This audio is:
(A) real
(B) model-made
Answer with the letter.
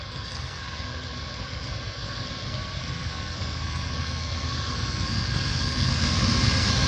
B